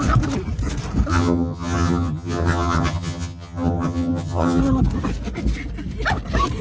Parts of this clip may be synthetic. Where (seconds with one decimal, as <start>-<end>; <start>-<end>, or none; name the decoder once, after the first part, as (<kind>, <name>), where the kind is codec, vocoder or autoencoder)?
1.1-4.6 (vocoder, HiFi-GAN)